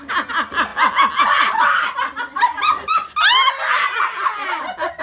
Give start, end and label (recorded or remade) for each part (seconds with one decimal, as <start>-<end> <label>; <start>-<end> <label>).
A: 0.0-5.0 recorded